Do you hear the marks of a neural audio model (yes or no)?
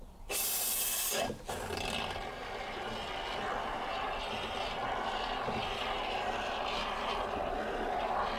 no